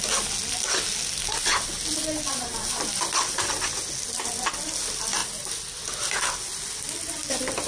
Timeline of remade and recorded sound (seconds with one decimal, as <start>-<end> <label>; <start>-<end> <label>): 0.0-7.7 recorded